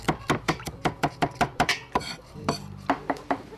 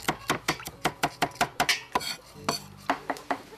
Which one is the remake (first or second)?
first